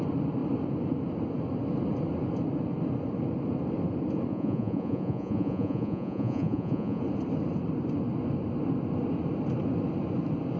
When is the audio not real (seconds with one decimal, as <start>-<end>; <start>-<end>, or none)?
4.3-7.0